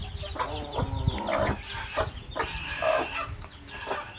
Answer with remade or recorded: recorded